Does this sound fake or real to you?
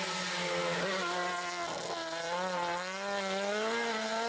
real